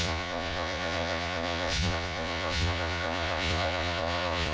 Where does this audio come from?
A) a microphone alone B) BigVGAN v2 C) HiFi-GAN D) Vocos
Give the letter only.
D